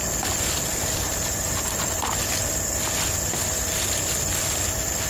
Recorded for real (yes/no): yes